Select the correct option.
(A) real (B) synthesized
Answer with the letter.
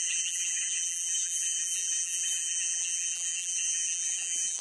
B